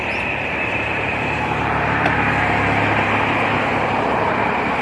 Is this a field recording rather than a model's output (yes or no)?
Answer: no